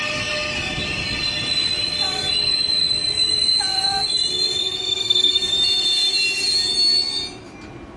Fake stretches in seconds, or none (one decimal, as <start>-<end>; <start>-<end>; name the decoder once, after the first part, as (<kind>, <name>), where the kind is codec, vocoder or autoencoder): 4.6-5.4 (codec, SNAC)